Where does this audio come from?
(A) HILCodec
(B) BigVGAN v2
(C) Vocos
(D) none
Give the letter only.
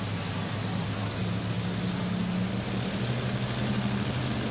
D